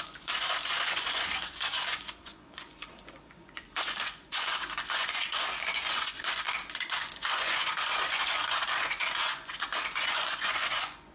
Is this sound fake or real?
fake